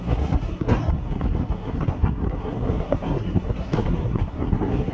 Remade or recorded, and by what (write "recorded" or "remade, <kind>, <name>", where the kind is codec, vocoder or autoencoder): remade, codec, SNAC